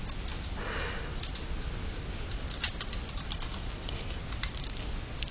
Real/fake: real